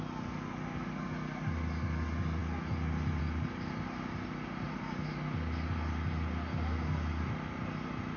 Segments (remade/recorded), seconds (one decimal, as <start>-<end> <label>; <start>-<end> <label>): 0.0-8.2 recorded